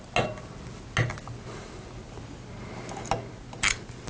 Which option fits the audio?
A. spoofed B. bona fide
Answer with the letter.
B